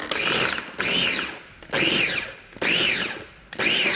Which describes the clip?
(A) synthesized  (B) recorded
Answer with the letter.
B